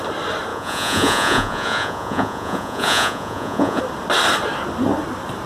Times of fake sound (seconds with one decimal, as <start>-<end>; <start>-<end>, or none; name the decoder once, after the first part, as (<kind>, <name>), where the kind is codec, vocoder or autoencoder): 0.5-3.8 (vocoder, Vocos)